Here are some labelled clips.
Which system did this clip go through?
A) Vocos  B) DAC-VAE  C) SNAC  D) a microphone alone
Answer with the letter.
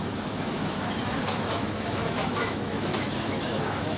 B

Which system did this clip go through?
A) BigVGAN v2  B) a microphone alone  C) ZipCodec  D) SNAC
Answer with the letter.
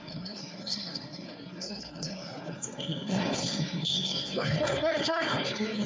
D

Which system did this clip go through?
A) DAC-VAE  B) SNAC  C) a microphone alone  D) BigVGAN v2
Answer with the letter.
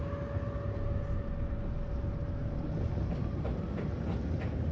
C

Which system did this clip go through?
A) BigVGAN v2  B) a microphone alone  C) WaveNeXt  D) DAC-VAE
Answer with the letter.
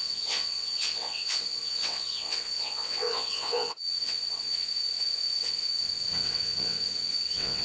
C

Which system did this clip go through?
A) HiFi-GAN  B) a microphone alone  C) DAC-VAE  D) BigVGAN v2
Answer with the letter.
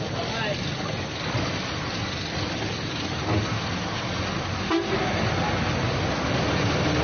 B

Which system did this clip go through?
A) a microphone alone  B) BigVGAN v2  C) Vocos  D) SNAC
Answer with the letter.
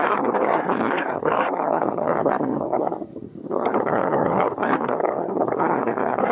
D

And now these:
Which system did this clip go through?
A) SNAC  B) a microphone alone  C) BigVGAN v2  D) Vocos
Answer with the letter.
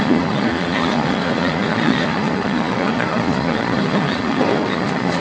D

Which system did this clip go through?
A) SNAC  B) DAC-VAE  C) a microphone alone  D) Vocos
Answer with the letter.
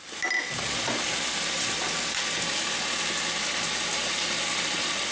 C